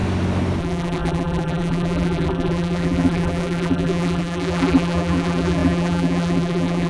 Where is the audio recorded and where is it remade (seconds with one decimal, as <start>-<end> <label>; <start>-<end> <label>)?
0.0-0.6 recorded; 0.6-6.9 remade